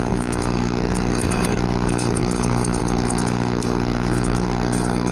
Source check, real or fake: fake